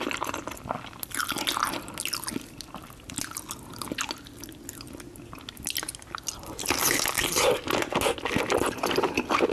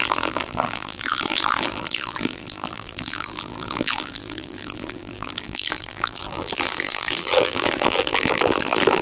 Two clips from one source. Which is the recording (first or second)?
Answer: first